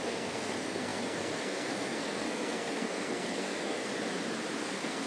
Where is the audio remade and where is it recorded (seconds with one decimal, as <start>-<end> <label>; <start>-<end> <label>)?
0.0-3.9 remade; 3.9-4.6 recorded; 4.6-5.1 remade